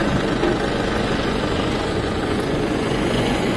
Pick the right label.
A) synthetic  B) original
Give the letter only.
A